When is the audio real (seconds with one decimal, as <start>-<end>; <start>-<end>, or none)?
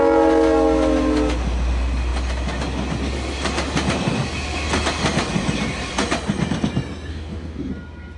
0.0-7.1; 7.7-8.2